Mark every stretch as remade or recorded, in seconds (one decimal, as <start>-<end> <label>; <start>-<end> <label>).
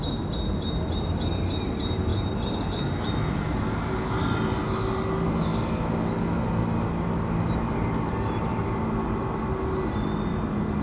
0.0-10.8 recorded